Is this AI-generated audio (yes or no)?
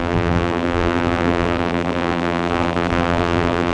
yes